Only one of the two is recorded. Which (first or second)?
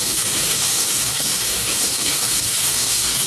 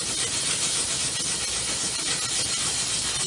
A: second